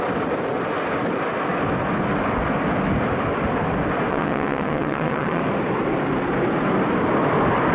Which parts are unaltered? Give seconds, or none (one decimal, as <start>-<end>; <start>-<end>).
0.0-4.1; 5.4-7.7